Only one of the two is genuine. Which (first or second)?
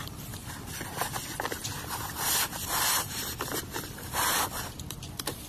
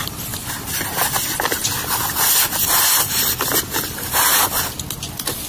second